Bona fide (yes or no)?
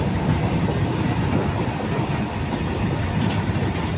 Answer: yes